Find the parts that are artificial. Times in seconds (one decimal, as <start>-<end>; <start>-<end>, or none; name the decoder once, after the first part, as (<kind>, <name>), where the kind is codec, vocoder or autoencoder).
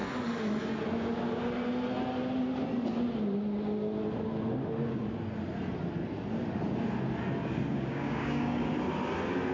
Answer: 7.7-8.7 (codec, DAC)